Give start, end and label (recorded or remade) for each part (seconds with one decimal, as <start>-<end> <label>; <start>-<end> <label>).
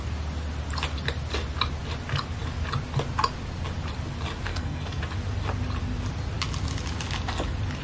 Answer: 0.0-4.5 recorded; 4.5-5.0 remade; 5.0-7.8 recorded